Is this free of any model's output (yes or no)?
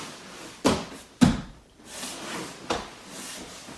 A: no